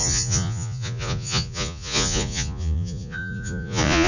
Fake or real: fake